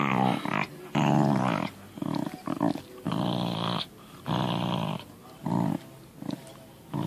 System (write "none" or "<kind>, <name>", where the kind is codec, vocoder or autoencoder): none